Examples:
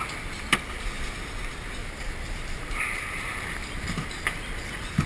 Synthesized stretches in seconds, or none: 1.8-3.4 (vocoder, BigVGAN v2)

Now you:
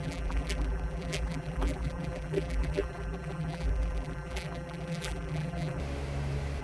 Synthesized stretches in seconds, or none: 0.0-5.8 (vocoder, BigVGAN v2)

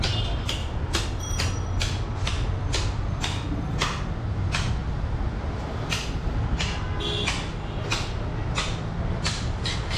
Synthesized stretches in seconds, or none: none

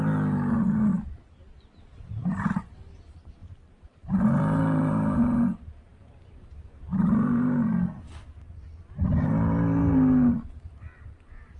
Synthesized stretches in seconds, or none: 3.4-4.6 (vocoder, BigVGAN v2); 5.9-7.7